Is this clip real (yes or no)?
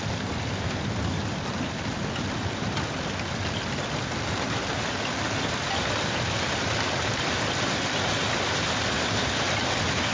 yes